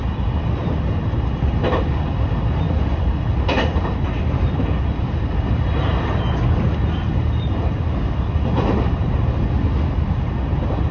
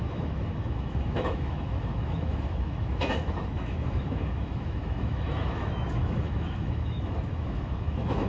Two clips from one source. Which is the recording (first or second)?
first